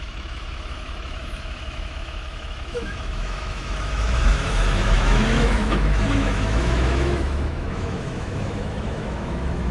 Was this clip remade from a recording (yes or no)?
yes